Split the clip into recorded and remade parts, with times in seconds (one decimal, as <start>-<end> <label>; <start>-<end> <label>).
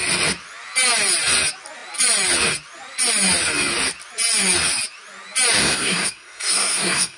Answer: 0.0-5.6 recorded; 5.6-7.2 remade